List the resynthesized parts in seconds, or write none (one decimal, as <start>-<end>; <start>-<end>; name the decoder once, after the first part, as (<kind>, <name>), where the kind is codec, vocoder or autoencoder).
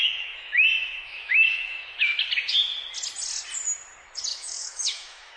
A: 0.0-2.3 (autoencoder, DAC-VAE); 4.3-5.4